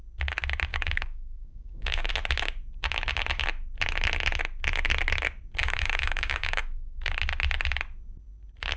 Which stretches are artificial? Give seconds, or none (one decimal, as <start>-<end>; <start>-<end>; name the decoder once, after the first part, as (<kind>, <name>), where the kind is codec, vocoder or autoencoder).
0.7-2.1 (codec, DAC); 5.6-7.1